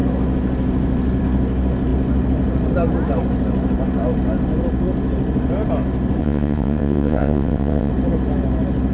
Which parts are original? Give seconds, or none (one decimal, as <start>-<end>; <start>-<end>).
0.0-6.2; 7.9-8.9